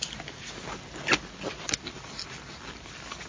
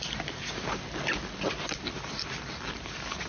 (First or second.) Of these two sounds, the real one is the first